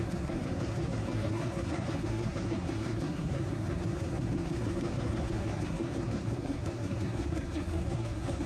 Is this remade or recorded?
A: remade